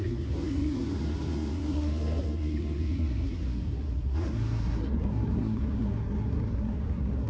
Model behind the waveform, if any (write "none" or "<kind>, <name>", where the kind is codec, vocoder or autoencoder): codec, SNAC